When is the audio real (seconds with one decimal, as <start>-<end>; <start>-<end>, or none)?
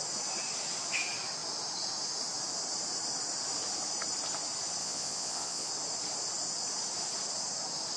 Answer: 0.0-4.8; 5.7-8.0